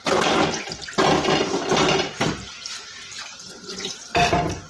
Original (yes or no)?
yes